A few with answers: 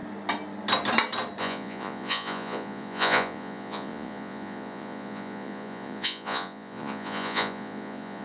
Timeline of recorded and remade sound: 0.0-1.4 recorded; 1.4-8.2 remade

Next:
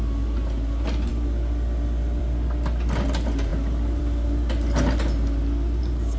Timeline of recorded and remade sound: 0.0-6.2 recorded

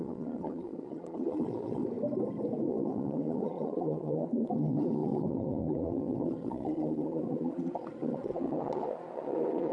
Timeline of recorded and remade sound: 0.0-1.8 remade; 1.8-2.7 recorded; 2.7-9.7 remade